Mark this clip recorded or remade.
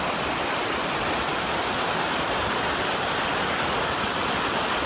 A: recorded